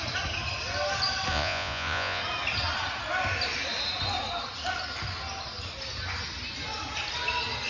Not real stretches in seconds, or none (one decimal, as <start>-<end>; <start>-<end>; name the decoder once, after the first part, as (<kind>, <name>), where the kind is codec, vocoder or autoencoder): 1.3-2.2 (vocoder, Vocos)